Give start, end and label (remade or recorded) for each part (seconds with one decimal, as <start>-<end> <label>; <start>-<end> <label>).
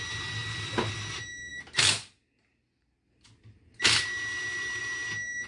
0.0-5.5 recorded